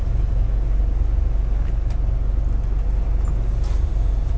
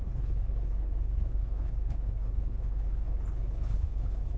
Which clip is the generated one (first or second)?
second